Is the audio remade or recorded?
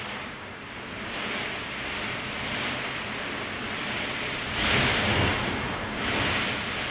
recorded